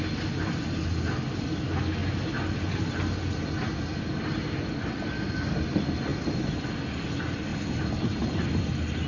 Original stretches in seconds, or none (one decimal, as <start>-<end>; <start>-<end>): 0.0-2.0; 2.7-6.1; 6.7-9.1